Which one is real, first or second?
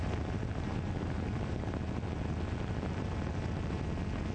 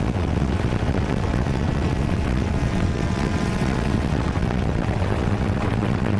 first